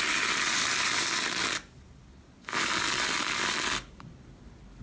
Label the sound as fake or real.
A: real